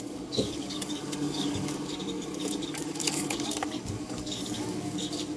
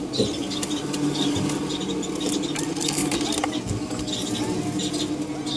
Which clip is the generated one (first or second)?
first